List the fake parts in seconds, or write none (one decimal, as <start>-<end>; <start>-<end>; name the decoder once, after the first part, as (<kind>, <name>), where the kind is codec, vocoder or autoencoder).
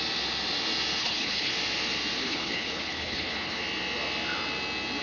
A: 1.0-1.5 (codec, HILCodec); 2.2-3.6